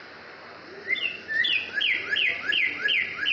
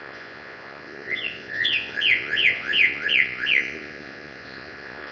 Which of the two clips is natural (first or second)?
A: first